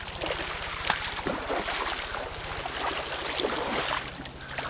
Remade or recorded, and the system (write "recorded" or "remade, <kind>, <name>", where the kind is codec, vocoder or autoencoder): recorded